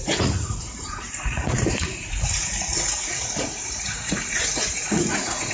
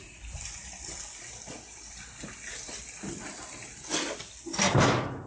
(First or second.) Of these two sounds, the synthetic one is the first